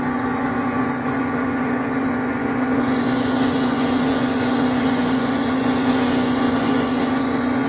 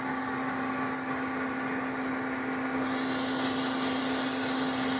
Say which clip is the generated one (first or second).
first